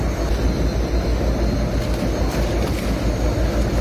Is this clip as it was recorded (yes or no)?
yes